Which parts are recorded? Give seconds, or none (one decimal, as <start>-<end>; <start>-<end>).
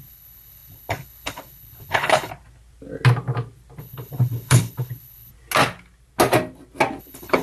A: 2.3-3.8; 5.3-7.0